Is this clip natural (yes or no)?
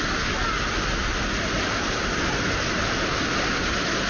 yes